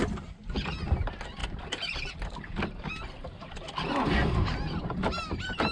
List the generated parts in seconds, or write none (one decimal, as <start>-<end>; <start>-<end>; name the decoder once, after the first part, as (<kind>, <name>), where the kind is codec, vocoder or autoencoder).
1.4-4.8 (vocoder, BigVGAN v2)